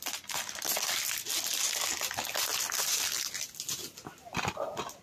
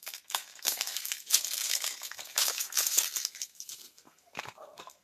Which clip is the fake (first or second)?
second